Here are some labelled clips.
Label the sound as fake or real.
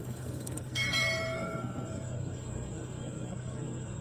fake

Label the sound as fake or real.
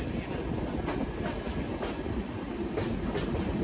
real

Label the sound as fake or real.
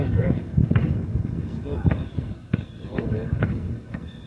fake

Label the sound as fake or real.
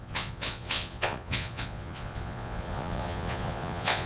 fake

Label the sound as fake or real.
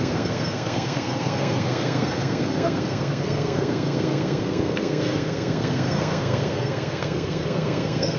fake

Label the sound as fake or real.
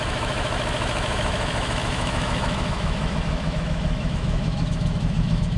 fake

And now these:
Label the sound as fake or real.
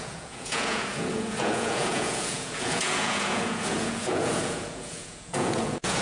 fake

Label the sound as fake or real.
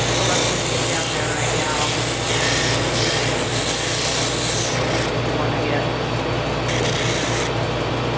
real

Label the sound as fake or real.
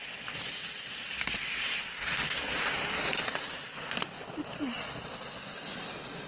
real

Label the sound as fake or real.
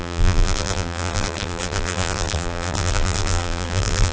fake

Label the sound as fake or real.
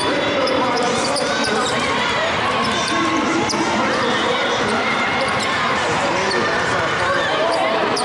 fake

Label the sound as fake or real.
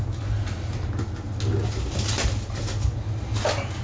real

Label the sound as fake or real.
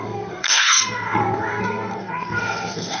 fake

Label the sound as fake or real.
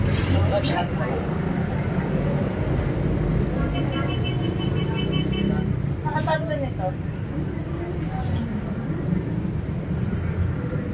real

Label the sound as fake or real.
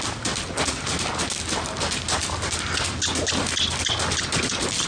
real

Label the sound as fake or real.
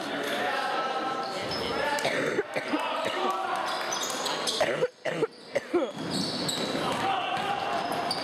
real